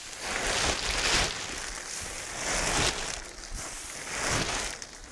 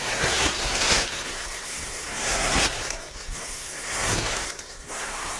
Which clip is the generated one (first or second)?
second